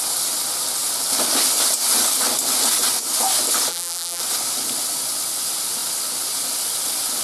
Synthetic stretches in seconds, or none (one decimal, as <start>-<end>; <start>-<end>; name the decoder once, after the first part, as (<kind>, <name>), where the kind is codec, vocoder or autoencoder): 3.7-4.2 (vocoder, BigVGAN v2)